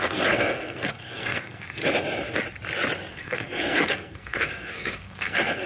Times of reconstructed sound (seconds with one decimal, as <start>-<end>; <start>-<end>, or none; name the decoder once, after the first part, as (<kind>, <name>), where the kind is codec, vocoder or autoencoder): 0.0-1.8 (codec, SNAC); 3.1-5.7